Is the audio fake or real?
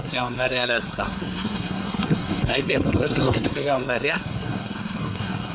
fake